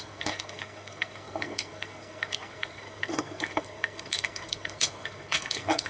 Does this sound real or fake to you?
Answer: fake